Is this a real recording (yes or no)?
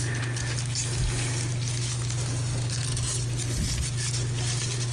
yes